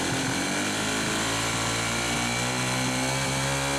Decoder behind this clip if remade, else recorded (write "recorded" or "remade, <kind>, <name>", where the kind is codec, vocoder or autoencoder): recorded